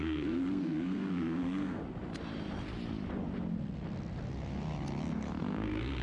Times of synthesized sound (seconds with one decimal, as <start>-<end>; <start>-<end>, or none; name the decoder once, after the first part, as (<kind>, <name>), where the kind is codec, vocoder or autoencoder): 0.0-1.8 (codec, SNAC); 5.4-6.0